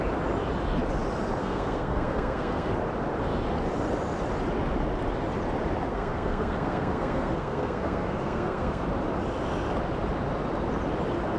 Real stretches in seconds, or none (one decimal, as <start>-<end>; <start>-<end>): 0.0-1.4; 2.7-5.9; 8.8-11.4

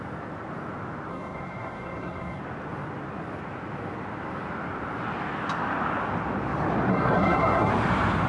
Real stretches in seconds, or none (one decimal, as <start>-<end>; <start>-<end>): 0.0-1.1; 2.4-6.9; 7.7-8.3

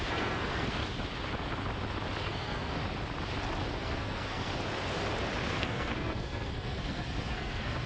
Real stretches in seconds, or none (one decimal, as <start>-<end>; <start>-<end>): 0.8-2.2; 2.8-3.8; 4.5-5.5

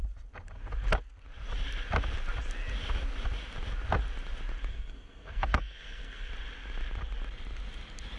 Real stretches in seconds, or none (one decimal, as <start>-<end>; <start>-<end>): 0.0-4.7; 6.3-8.2